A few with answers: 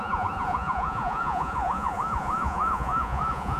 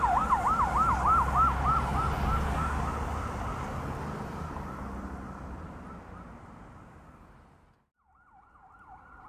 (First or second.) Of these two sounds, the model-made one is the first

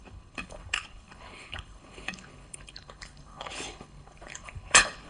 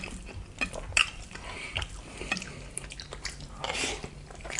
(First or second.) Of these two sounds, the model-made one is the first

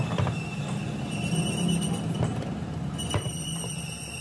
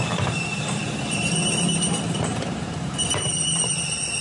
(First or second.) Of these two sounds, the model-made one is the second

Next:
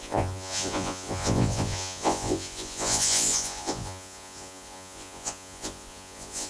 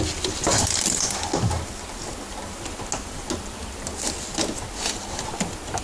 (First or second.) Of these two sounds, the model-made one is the first